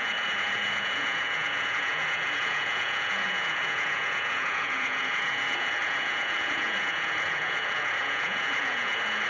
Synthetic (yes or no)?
yes